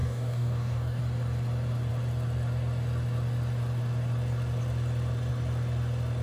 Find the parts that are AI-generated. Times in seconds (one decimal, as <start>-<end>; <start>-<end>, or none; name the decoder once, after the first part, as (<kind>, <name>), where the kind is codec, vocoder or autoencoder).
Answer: 0.0-1.0 (codec, DAC)